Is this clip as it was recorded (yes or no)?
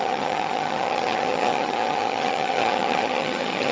no